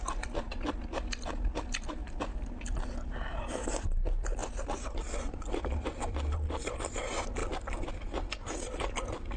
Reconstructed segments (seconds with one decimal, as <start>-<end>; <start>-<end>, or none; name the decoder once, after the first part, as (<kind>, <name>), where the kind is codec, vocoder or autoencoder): 2.0-2.5 (vocoder, BigVGAN v2); 4.4-5.6